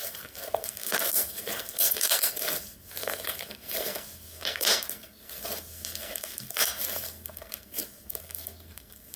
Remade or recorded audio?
remade